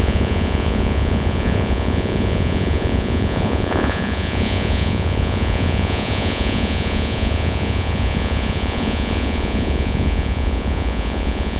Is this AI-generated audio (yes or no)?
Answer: yes